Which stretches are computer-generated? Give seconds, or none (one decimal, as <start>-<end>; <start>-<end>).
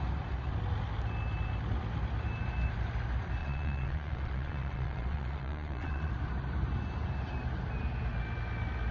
3.4-6.1